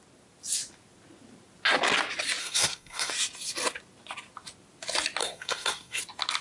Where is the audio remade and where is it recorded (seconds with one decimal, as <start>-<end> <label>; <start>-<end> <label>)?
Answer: 0.0-2.4 recorded; 2.4-3.1 remade; 3.1-5.2 recorded; 5.2-6.0 remade; 6.0-6.4 recorded